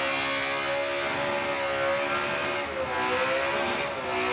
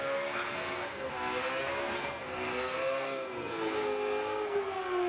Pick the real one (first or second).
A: first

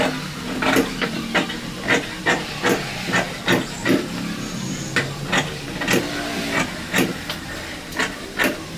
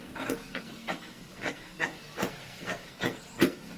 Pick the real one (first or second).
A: first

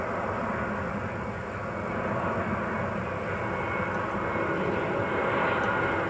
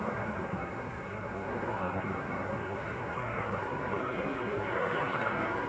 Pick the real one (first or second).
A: first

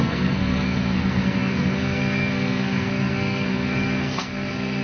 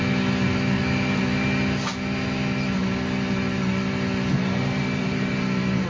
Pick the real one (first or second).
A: second